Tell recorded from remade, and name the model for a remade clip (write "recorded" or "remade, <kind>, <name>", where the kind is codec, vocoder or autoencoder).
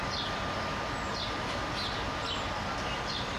recorded